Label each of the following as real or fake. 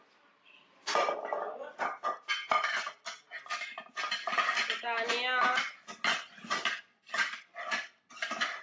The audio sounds real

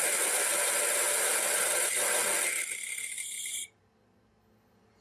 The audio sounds real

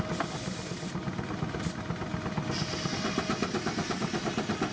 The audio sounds real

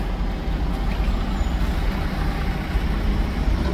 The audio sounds real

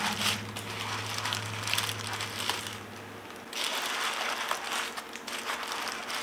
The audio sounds real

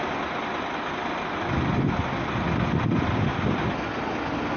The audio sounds real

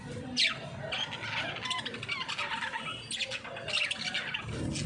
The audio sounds real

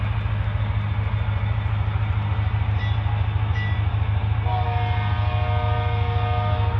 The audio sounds real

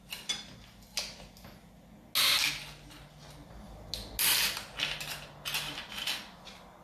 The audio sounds real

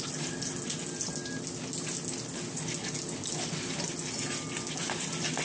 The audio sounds real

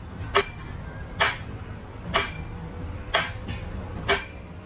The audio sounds real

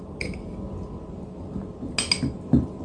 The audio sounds real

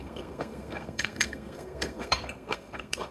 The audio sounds fake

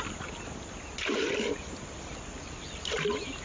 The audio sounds real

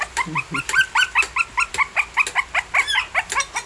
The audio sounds real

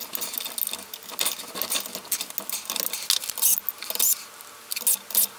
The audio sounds real